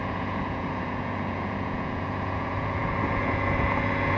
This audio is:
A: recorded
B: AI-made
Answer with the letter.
B